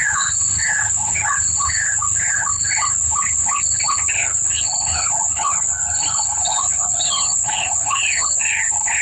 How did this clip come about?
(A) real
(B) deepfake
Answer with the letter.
B